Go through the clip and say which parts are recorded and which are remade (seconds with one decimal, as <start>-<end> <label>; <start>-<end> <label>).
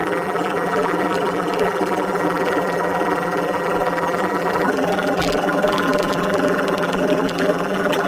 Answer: 0.0-8.1 remade